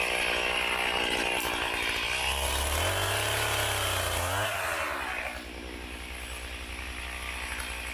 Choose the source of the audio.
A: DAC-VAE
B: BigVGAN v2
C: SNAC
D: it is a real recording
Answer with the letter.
D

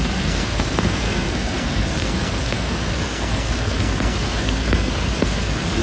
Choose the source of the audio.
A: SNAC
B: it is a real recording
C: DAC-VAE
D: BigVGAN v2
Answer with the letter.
A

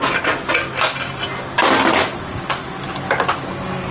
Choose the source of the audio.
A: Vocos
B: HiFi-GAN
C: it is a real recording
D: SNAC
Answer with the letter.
C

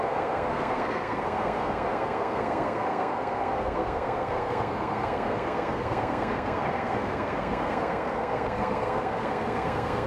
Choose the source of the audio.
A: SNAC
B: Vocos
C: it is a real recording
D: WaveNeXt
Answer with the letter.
A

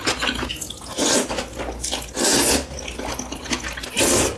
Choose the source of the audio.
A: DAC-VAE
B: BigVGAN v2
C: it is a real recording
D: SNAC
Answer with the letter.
C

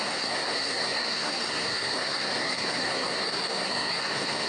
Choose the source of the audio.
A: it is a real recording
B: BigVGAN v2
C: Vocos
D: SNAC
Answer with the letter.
D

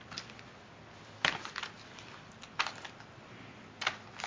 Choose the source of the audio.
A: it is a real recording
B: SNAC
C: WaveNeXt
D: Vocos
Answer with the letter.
A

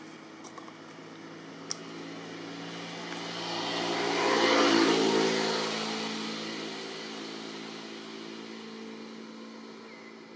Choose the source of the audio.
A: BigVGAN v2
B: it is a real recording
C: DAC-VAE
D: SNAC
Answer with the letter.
B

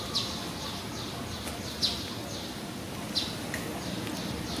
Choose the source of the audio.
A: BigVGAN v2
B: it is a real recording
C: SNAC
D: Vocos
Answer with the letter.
B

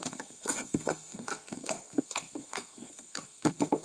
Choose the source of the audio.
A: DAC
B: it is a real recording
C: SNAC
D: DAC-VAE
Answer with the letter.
C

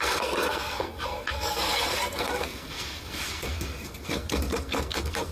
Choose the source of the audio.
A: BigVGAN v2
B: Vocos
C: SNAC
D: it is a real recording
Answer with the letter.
C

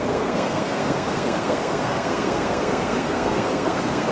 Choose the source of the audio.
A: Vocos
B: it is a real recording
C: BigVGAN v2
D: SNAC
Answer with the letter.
D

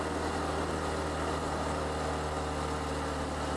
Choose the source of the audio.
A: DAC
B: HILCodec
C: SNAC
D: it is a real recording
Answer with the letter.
D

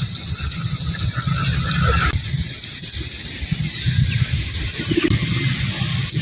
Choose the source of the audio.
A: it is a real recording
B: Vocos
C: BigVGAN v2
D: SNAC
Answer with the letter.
A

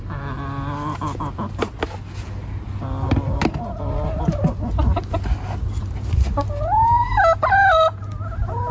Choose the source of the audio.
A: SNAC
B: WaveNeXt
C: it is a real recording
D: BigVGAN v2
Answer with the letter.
C